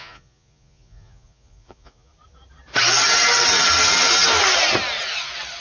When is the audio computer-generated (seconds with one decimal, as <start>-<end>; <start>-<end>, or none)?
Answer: 0.0-2.1